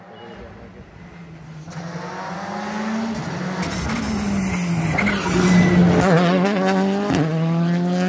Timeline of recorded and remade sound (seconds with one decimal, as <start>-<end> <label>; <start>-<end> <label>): 0.0-8.1 recorded